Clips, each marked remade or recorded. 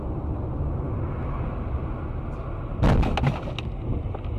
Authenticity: recorded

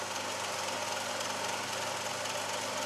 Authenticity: recorded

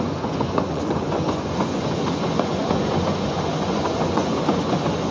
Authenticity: remade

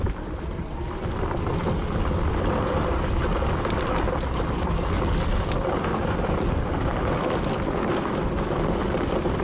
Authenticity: recorded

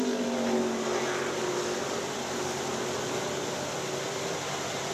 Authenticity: recorded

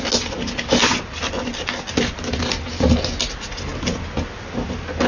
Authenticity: recorded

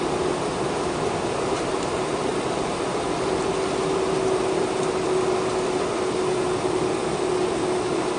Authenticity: recorded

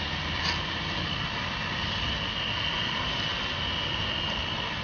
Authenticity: recorded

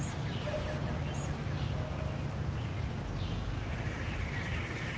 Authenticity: recorded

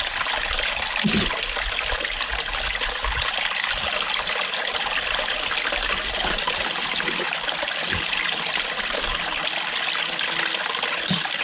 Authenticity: recorded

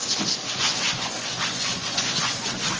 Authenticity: remade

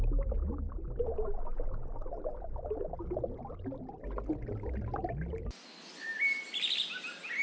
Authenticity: recorded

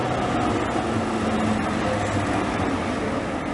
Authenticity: recorded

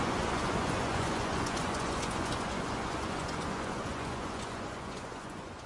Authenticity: remade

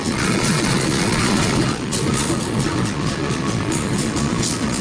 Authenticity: remade